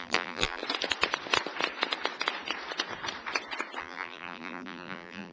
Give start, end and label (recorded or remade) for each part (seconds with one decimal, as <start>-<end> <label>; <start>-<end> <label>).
0.0-0.6 remade; 0.6-3.8 recorded; 3.8-5.3 remade